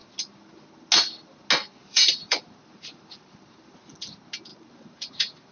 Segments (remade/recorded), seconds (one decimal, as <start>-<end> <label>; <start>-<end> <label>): 0.0-1.8 recorded; 1.8-3.8 remade; 3.8-4.5 recorded; 4.5-5.5 remade